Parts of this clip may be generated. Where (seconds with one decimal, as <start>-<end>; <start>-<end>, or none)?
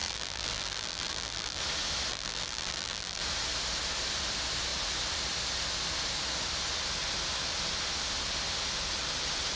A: 0.0-1.6; 2.1-3.2